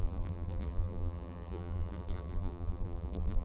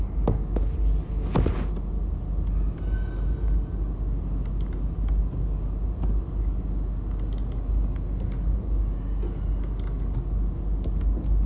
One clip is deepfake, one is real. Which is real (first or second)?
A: second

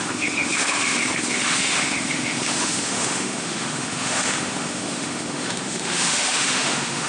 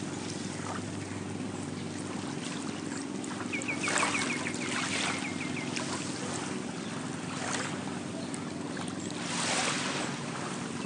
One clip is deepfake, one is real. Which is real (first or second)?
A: second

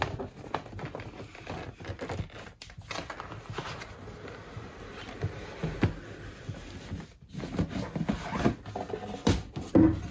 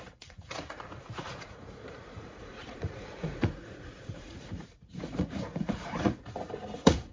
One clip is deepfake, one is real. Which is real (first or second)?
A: first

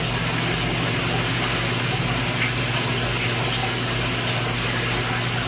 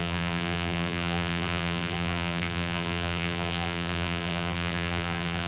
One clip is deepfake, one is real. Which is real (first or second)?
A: first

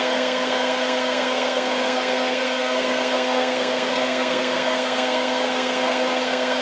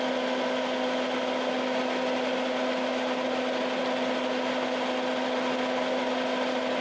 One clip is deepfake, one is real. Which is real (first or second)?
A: second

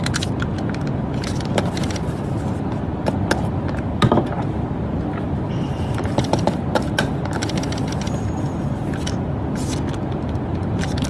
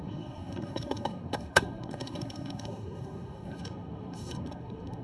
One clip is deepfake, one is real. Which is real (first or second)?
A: first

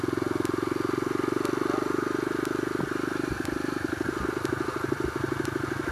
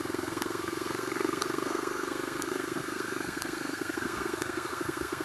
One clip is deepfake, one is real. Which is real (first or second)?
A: first